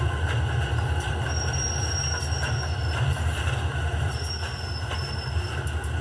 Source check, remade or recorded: recorded